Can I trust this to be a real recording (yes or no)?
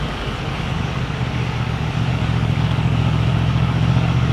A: no